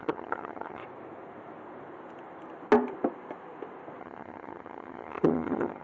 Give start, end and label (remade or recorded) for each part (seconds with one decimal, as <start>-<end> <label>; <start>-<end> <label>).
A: 0.0-0.8 remade; 0.8-4.0 recorded; 4.0-5.8 remade